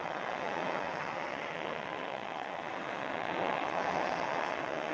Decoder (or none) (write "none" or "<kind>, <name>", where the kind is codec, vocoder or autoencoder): vocoder, WaveNeXt